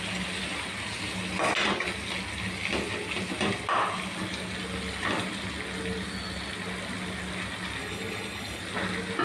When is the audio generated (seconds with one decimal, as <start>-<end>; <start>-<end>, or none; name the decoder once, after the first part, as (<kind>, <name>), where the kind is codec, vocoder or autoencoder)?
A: 7.8-8.6 (codec, HILCodec)